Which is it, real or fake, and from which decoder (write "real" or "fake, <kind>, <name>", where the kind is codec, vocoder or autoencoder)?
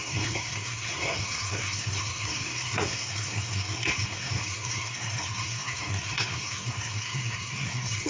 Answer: fake, codec, SNAC